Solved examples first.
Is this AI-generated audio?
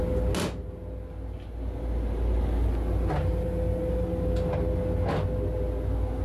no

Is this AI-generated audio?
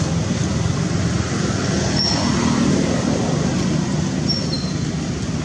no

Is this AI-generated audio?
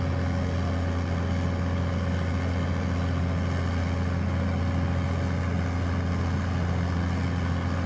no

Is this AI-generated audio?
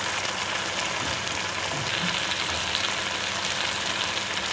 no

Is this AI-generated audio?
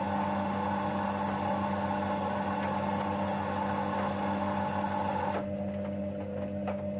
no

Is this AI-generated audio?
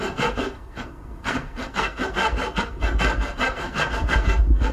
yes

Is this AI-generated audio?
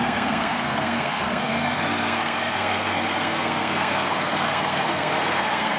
yes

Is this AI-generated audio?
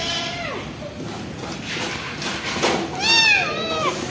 no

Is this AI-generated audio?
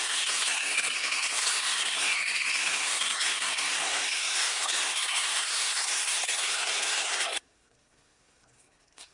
yes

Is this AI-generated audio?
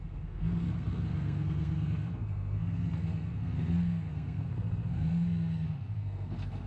yes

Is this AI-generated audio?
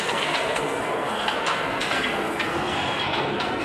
yes